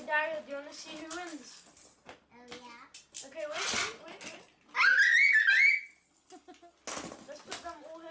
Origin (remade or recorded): recorded